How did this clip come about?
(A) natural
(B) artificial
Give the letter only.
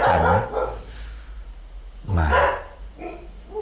A